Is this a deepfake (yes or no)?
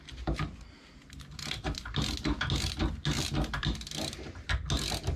no